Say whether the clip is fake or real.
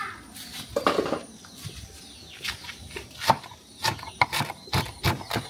fake